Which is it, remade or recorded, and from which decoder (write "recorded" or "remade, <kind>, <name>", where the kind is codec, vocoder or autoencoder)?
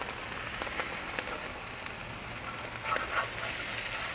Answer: recorded